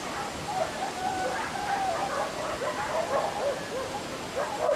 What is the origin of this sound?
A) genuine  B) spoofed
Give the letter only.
A